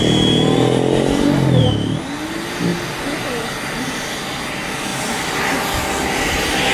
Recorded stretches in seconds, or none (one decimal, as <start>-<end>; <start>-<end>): 0.0-6.7